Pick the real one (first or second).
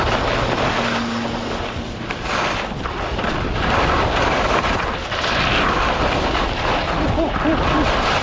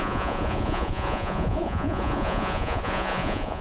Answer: first